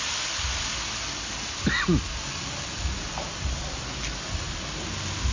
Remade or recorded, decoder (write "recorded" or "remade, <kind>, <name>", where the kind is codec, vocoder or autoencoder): recorded